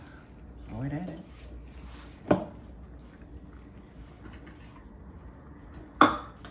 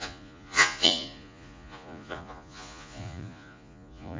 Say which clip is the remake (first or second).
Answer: second